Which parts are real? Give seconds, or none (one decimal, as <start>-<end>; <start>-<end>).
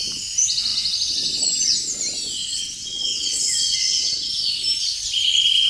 0.0-2.4; 4.3-5.7